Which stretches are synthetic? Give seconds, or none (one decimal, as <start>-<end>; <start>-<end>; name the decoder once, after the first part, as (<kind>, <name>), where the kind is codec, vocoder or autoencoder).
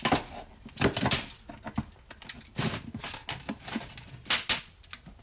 none